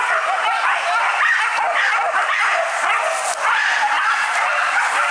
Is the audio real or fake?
real